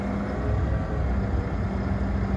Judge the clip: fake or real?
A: real